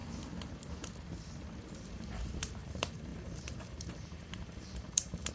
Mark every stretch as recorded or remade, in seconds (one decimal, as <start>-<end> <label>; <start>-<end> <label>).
0.0-1.9 recorded; 1.9-5.3 remade